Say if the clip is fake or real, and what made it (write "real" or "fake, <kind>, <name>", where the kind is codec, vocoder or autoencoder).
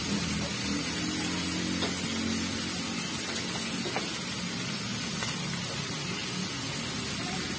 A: real